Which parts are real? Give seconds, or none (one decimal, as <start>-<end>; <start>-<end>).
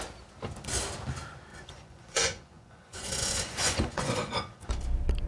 0.0-1.5; 4.7-5.3